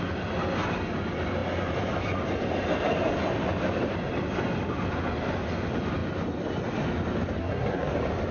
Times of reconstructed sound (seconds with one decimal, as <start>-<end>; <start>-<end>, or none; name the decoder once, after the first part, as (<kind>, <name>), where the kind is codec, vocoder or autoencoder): 7.4-7.9 (codec, SNAC)

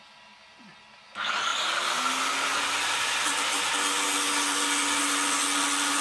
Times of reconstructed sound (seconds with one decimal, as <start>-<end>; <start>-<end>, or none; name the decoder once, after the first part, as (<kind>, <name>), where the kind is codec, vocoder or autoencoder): none

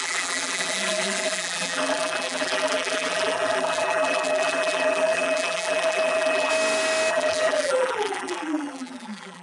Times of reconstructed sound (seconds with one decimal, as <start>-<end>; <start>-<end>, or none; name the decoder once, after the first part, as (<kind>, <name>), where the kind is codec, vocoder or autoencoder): 0.0-6.5 (vocoder, BigVGAN v2); 7.1-9.4